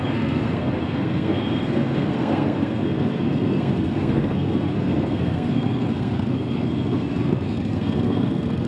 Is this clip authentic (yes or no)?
no